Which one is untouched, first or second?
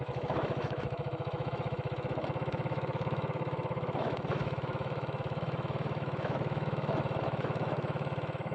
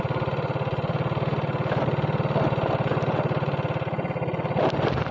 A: second